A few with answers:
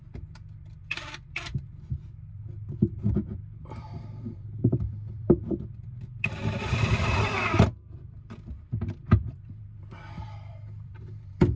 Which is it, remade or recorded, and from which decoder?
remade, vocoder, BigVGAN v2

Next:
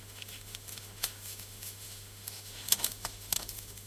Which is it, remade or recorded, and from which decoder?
remade, autoencoder, DAC-VAE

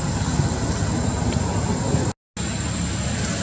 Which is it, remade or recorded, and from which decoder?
recorded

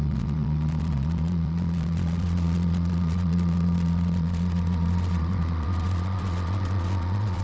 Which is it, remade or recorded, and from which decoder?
remade, vocoder, Vocos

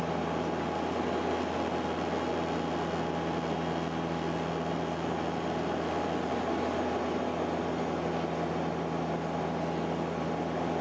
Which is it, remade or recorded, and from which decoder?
recorded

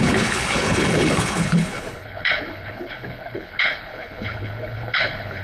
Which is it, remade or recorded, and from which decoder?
remade, codec, HILCodec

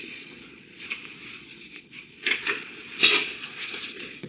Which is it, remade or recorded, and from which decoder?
remade, vocoder, Vocos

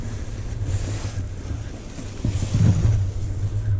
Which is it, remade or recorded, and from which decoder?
recorded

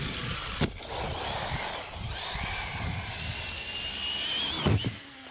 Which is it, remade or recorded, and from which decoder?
recorded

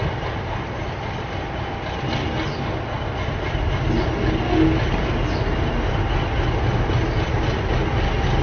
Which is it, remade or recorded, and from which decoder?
recorded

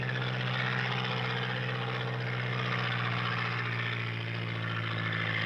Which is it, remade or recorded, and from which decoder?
recorded